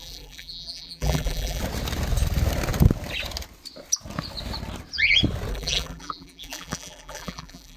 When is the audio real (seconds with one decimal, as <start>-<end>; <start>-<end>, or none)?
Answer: 1.6-5.5